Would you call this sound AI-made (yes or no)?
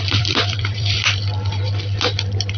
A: yes